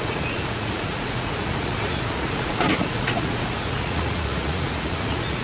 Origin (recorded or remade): remade